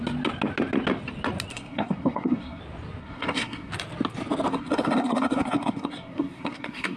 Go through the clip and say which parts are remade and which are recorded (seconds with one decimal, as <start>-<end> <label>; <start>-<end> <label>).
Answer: 0.0-1.5 recorded; 1.5-2.6 remade; 2.6-3.0 recorded; 3.0-3.7 remade; 3.7-4.5 recorded; 4.5-7.0 remade